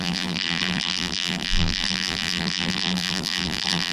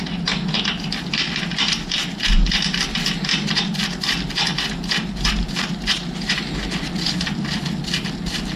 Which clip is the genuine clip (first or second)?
second